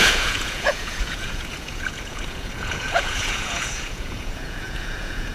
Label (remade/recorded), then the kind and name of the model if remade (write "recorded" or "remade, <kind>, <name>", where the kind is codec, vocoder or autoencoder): remade, vocoder, Vocos